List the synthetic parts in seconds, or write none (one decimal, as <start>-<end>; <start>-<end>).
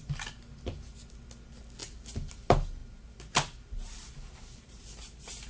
none